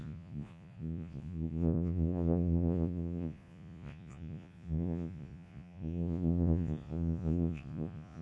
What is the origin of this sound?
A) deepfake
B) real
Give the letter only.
A